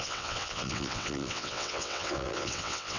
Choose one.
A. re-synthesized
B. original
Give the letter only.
A